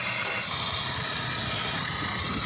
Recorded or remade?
recorded